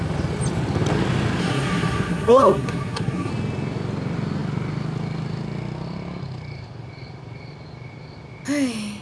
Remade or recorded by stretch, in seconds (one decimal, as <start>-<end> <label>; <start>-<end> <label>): 0.0-1.4 recorded; 1.4-3.3 remade; 3.3-9.0 recorded